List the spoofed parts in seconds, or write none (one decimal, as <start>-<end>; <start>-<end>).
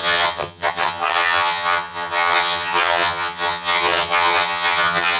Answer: 0.0-5.2